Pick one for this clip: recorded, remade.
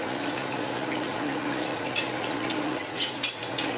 remade